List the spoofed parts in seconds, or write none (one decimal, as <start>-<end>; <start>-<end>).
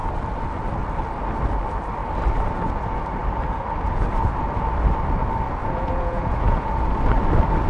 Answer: 5.6-6.7